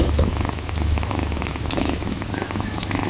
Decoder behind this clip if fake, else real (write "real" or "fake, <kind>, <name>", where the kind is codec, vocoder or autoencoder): fake, autoencoder, DAC-VAE